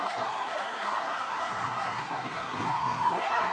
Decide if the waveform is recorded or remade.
remade